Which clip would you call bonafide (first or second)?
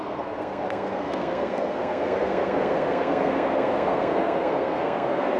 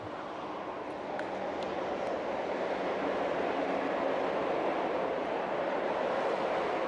second